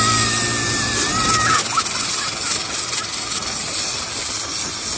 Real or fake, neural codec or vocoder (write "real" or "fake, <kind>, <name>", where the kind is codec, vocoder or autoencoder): real